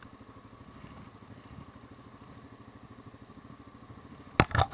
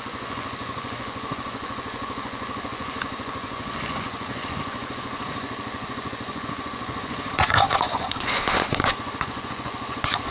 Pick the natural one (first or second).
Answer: first